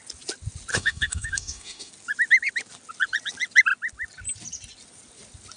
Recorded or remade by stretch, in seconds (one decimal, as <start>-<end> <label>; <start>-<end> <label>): 0.0-0.7 recorded; 0.7-1.9 remade; 1.9-5.6 recorded